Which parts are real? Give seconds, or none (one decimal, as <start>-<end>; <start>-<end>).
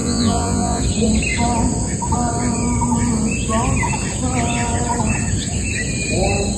0.8-6.6